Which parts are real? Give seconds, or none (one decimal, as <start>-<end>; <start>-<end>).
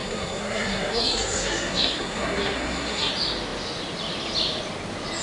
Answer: 3.1-5.2